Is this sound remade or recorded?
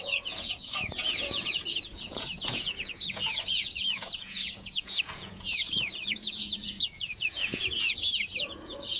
remade